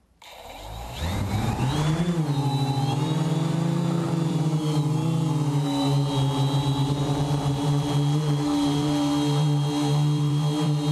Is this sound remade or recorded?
remade